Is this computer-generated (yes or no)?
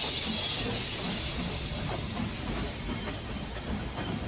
no